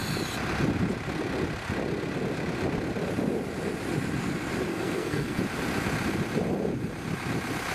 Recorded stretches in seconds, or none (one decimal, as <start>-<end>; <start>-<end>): 0.0-4.7; 5.4-7.7